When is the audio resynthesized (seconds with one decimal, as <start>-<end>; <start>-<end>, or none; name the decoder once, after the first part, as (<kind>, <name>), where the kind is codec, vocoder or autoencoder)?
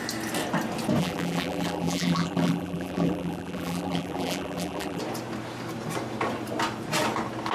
1.0-5.0 (vocoder, BigVGAN v2)